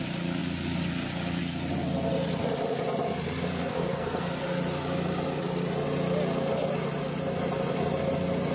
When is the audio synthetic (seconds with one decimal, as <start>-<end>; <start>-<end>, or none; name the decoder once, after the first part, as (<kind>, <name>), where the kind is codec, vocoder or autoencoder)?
3.5-4.3 (codec, SNAC)